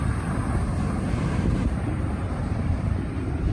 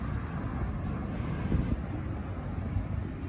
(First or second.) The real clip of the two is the second